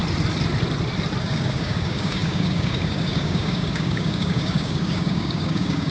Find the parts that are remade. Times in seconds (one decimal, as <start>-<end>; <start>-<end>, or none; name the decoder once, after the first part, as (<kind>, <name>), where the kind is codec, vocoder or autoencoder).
1.2-5.9 (codec, DAC)